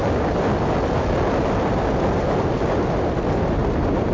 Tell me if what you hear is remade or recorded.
recorded